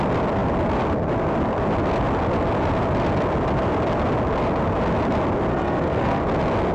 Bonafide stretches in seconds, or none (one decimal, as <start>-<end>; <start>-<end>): 0.0-5.5; 6.2-6.7